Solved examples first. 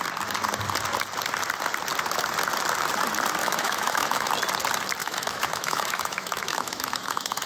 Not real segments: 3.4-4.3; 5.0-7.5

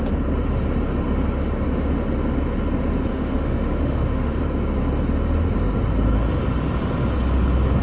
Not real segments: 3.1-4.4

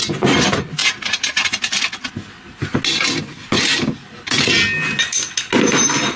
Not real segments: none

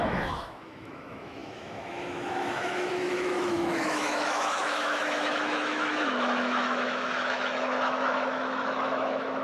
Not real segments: 0.0-9.4

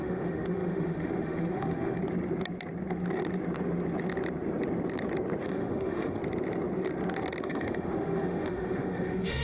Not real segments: 0.0-2.0; 5.4-6.2; 7.4-9.4

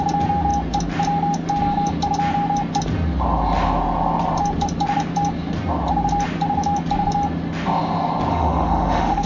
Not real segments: 8.3-9.3

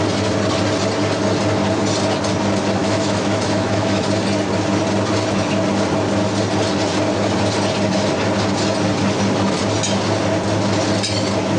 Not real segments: 2.8-4.0